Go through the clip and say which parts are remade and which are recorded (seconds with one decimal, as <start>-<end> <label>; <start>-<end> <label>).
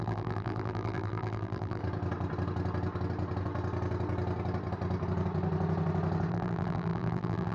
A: 0.0-1.8 remade; 1.8-6.3 recorded; 6.3-7.5 remade